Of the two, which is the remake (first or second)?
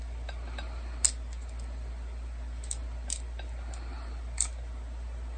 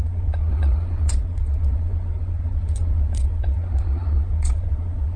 second